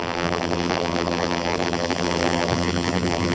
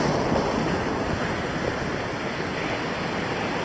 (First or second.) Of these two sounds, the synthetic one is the first